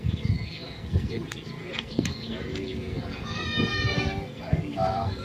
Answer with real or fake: fake